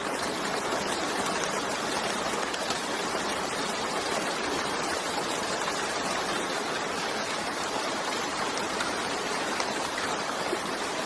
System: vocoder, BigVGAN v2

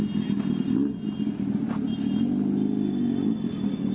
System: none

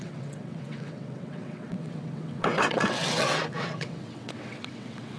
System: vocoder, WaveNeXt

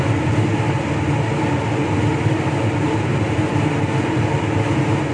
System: none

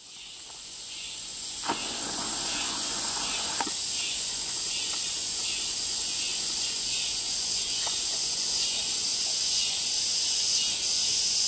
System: vocoder, Vocos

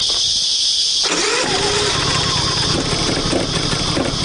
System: none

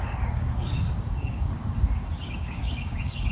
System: codec, DAC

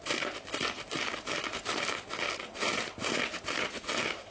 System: none